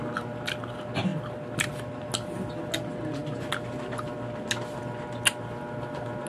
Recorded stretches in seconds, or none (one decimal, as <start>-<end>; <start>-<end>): 0.0-6.3

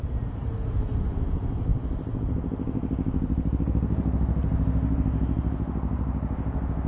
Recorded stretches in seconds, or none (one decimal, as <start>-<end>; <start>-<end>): 0.0-6.9

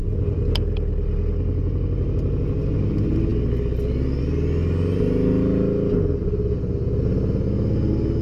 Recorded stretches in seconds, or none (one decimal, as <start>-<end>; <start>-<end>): 0.0-8.2

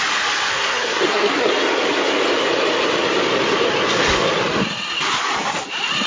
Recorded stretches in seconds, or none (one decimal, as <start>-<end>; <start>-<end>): 0.0-0.5; 1.5-6.1

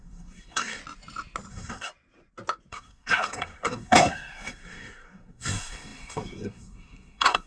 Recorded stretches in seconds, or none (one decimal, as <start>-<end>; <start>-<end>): 0.8-1.5; 1.9-2.7

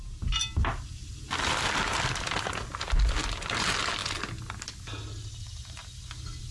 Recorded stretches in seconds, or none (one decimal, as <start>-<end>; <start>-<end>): 0.0-6.5